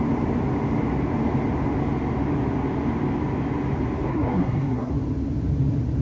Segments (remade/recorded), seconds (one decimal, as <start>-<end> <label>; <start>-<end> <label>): 0.0-4.1 recorded; 4.1-4.9 remade; 4.9-6.0 recorded